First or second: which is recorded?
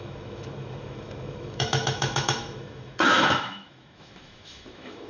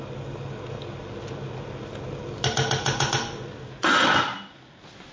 second